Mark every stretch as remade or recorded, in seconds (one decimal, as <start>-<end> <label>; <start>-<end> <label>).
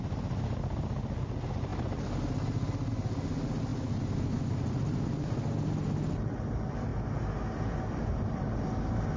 0.0-9.2 recorded